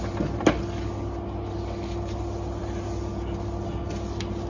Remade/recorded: recorded